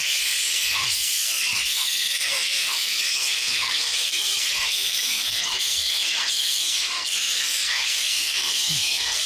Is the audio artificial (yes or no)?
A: yes